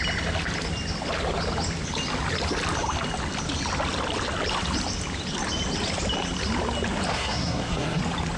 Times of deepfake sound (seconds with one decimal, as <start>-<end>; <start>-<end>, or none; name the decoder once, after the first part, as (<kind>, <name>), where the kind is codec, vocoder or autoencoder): 7.1-8.0 (codec, SNAC)

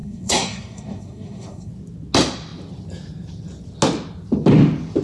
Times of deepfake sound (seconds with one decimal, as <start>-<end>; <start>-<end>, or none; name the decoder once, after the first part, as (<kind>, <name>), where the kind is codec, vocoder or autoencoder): 0.0-1.7 (codec, SNAC)

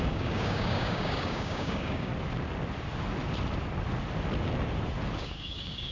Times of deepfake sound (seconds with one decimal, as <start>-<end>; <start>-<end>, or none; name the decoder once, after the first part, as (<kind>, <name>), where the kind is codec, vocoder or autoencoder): 0.0-2.1 (codec, DAC); 5.2-5.9

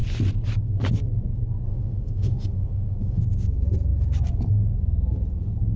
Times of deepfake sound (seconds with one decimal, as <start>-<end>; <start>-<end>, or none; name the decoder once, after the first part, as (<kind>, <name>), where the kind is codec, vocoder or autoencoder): 1.7-3.2 (autoencoder, DAC-VAE)